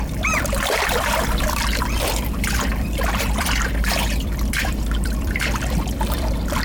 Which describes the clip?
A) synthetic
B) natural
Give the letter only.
A